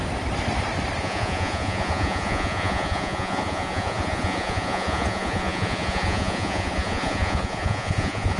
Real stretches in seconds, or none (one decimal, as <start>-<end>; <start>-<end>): 0.0-1.0

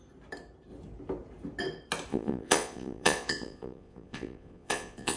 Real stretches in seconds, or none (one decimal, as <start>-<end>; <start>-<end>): 0.0-2.1

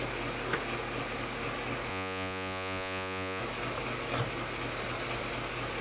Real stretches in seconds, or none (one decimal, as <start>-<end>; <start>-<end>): 0.0-1.9; 3.4-5.8

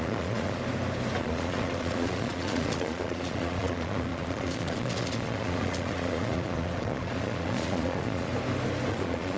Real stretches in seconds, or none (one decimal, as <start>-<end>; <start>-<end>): 0.6-1.2; 8.3-8.9